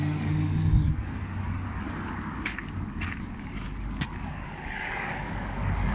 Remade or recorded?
remade